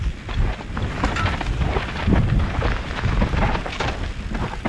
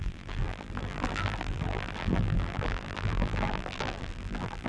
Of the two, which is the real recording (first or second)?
first